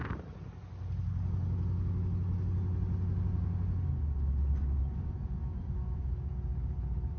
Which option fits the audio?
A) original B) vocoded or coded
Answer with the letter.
A